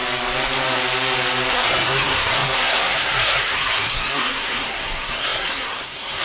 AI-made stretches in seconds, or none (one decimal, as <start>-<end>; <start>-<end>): 1.5-6.2